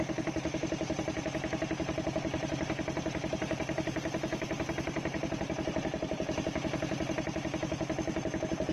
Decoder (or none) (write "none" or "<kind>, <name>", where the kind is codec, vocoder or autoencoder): none